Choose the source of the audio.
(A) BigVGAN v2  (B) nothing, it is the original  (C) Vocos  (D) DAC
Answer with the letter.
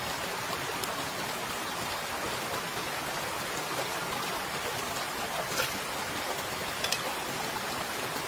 B